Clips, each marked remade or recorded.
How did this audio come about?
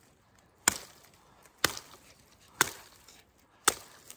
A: recorded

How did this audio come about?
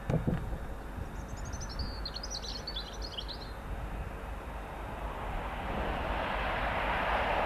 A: recorded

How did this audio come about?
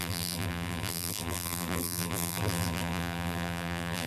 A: remade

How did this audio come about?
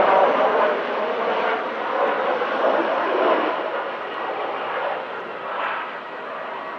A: remade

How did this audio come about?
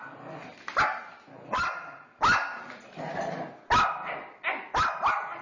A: recorded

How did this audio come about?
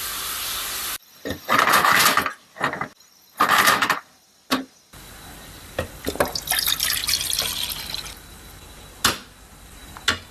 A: recorded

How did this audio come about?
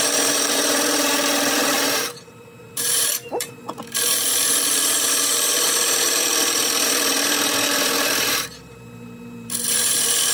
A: remade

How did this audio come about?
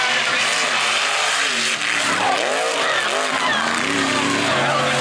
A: recorded